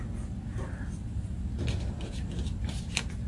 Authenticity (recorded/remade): recorded